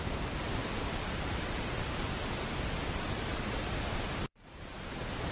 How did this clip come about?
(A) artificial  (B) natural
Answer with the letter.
A